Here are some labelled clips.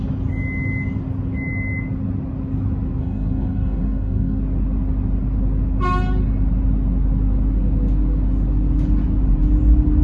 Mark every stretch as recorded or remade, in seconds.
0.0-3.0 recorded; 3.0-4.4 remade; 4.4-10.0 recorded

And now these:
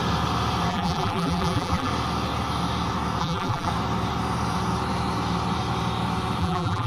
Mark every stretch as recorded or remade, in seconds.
0.0-0.7 recorded; 0.7-1.9 remade; 1.9-3.2 recorded; 3.2-3.7 remade; 3.7-6.4 recorded; 6.4-6.9 remade

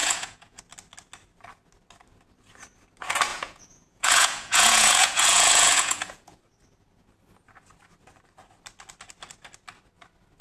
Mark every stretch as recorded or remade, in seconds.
0.0-0.6 remade; 0.6-3.3 recorded; 3.3-6.4 remade; 6.4-10.4 recorded